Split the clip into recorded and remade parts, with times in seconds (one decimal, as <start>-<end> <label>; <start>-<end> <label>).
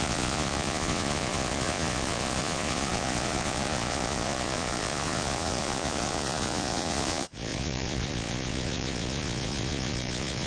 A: 0.0-10.5 remade